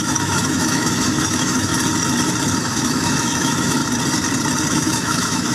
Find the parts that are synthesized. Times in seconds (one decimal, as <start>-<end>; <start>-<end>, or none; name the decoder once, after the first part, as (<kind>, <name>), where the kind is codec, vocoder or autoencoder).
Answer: 0.0-1.7 (autoencoder, DAC-VAE); 2.6-3.8; 4.7-5.5